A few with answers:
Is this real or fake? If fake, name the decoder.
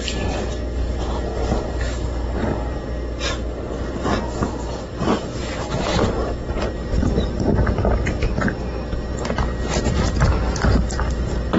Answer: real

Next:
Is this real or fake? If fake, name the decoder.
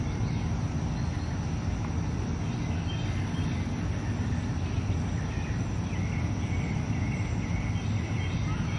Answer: real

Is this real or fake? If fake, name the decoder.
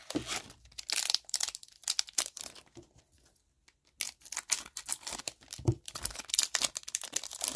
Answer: real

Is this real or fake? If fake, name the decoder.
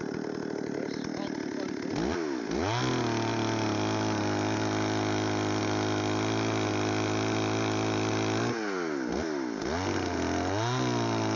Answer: real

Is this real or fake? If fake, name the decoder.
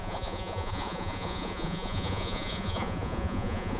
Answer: fake, vocoder, Vocos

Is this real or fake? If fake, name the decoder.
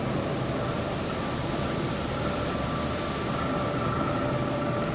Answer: real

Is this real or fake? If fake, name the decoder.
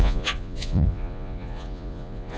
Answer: fake, vocoder, Vocos